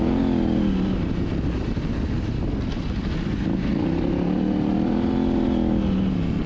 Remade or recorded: recorded